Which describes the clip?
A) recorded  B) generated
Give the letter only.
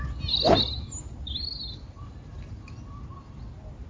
A